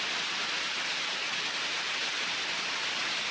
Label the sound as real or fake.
real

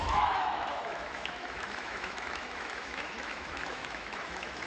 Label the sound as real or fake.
fake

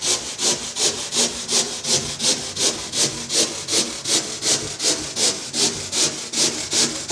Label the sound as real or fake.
real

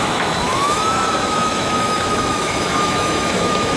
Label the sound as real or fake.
fake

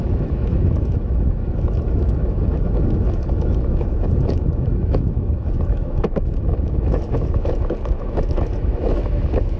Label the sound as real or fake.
fake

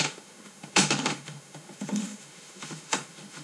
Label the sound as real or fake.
fake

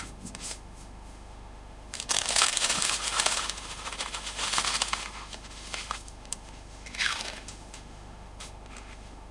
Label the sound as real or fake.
fake